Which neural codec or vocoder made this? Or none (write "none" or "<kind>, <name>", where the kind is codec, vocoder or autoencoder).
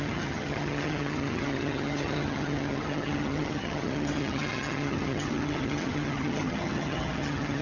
vocoder, HiFi-GAN